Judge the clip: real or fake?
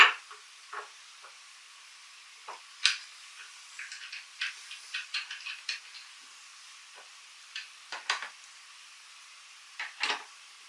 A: real